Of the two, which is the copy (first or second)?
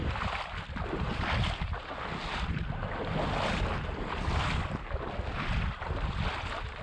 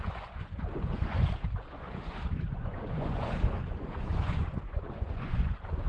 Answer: second